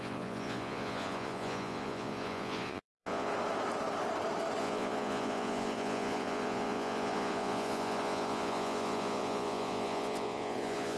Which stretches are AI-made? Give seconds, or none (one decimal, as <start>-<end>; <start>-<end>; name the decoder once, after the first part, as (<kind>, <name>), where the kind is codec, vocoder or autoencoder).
0.0-3.3 (vocoder, Vocos); 4.6-11.0